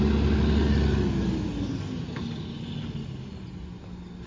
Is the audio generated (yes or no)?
no